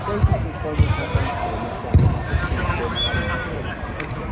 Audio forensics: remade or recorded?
recorded